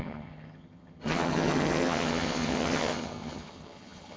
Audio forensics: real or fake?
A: fake